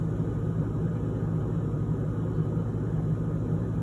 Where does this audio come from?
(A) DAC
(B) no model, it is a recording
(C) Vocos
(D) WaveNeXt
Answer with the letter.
B